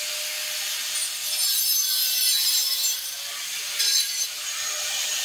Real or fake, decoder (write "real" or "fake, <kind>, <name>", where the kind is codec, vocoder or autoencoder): fake, vocoder, BigVGAN v2